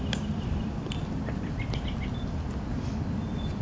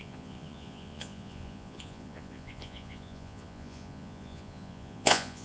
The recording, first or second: first